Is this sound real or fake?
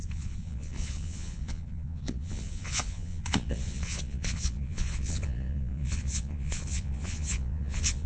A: fake